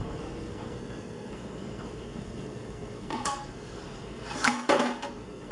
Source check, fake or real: fake